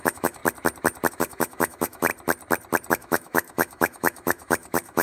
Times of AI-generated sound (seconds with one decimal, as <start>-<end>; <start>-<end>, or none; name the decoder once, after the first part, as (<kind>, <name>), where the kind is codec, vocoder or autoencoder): 0.0-0.4 (autoencoder, DAC-VAE); 1.1-2.1; 2.9-5.0

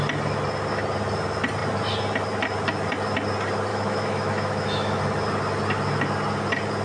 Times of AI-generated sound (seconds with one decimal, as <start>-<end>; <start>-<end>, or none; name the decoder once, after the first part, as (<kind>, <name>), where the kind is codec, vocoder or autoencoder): 3.7-5.0 (autoencoder, DAC-VAE)

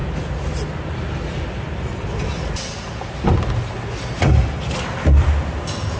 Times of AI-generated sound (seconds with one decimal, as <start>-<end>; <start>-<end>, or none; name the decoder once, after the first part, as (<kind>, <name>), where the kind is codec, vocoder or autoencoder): none

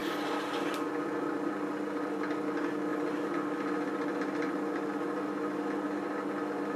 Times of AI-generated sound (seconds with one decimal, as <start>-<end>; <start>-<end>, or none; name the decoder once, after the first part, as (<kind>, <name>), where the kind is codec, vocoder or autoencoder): none